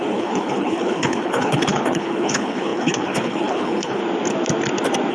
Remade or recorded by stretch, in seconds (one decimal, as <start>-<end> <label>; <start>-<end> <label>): 0.0-4.0 remade; 4.0-5.1 recorded